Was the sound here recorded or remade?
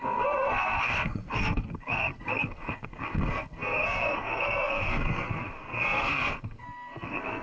remade